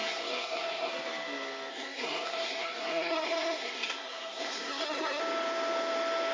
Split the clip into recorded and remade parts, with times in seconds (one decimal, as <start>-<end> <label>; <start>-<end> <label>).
0.0-0.9 remade; 0.9-1.7 recorded; 1.7-5.2 remade; 5.2-6.3 recorded